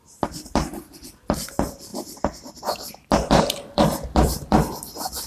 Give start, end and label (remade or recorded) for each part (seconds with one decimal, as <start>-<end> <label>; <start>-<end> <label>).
0.0-1.9 remade; 1.9-2.6 recorded; 2.6-5.3 remade

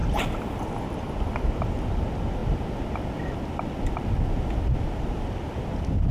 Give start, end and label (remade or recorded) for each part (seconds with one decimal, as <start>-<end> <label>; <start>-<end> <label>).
0.0-0.8 recorded; 0.8-2.4 remade; 2.4-4.6 recorded; 4.6-6.1 remade